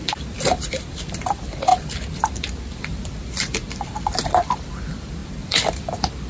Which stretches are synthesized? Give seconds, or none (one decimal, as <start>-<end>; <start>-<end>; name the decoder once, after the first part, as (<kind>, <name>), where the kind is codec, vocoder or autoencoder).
0.0-6.3 (vocoder, BigVGAN v2)